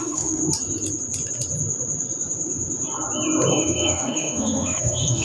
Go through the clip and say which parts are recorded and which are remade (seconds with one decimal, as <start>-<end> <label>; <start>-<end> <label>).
0.0-0.4 remade; 0.4-3.5 recorded; 3.5-5.2 remade